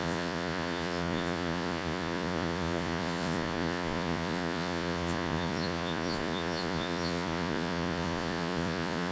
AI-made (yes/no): yes